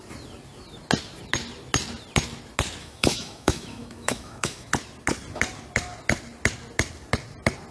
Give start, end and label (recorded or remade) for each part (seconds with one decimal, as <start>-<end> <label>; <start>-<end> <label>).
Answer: 0.0-2.8 recorded; 2.8-4.7 remade; 4.7-7.7 recorded